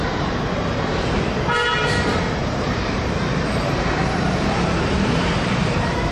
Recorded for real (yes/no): no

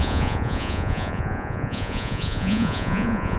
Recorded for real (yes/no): no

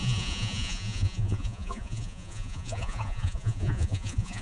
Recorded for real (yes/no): no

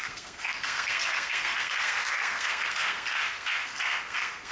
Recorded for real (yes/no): no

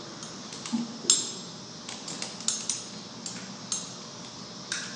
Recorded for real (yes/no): yes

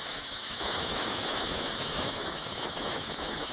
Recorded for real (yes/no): no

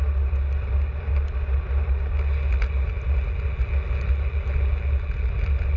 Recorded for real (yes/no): yes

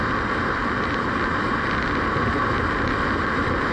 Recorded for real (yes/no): yes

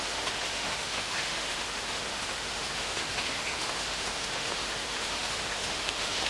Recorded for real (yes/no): no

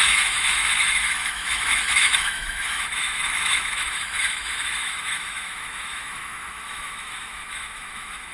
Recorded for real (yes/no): no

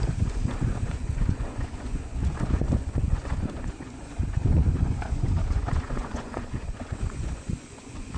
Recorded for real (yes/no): no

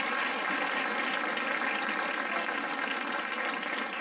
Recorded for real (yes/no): yes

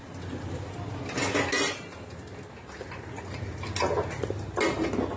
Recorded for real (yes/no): yes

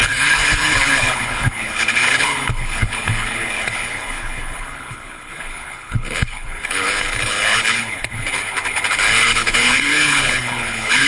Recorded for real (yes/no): no